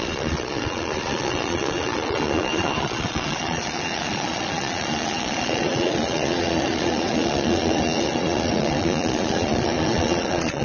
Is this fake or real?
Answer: fake